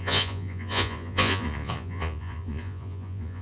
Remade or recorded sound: remade